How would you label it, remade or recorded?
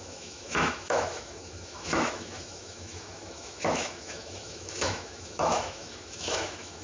remade